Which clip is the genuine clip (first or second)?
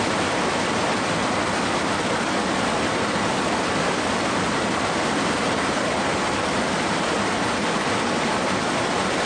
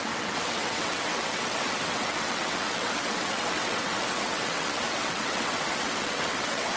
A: first